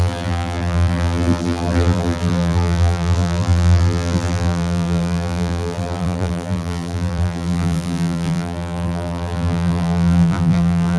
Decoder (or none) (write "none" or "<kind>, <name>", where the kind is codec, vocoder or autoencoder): vocoder, BigVGAN v2